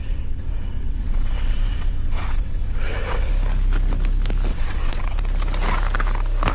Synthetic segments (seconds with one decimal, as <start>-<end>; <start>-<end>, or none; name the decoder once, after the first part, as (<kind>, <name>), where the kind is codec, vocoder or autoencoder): 0.0-3.3 (vocoder, WaveNeXt); 4.5-5.2